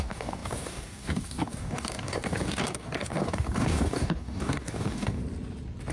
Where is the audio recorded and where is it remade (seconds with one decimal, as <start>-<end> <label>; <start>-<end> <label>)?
0.0-5.2 remade; 5.2-5.9 recorded